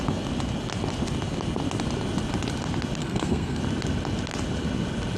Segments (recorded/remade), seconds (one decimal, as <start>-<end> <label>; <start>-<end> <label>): 0.0-3.0 recorded; 3.0-3.6 remade; 3.6-5.2 recorded